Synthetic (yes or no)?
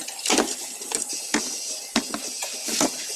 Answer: no